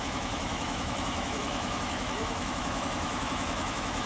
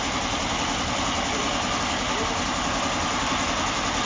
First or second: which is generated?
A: first